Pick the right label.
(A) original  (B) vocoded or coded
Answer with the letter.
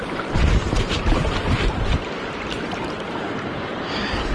B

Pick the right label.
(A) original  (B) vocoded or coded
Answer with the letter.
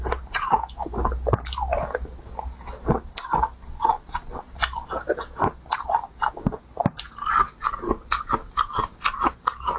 A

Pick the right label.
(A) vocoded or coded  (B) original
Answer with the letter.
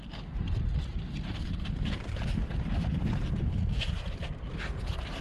B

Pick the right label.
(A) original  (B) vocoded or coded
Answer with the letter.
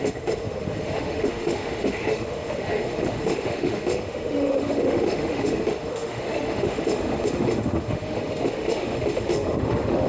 B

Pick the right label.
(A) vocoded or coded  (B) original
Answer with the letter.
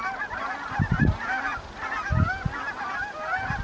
B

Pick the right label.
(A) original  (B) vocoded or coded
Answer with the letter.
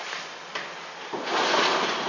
A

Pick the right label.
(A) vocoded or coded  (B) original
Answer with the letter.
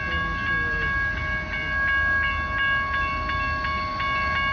B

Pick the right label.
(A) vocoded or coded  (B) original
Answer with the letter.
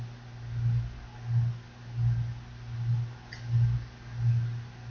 B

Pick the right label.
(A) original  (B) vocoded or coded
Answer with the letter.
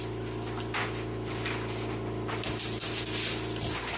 A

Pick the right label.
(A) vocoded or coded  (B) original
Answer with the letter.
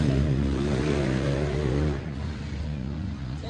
A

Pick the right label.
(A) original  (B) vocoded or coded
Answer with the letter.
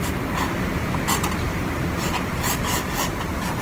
A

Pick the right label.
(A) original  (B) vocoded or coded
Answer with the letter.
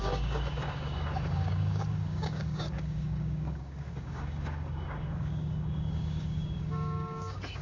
B